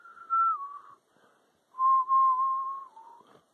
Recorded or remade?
recorded